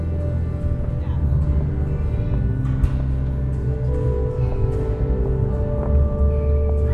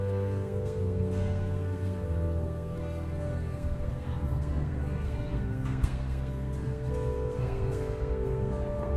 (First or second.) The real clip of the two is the first